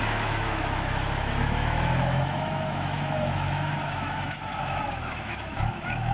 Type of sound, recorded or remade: remade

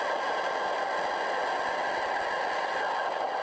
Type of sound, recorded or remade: recorded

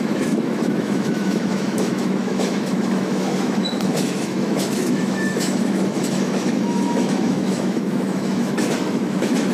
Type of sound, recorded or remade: remade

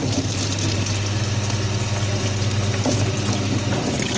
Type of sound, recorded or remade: recorded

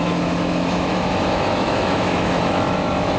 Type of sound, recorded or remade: remade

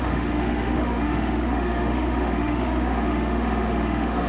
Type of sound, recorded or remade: remade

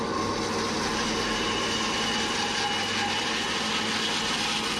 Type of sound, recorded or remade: recorded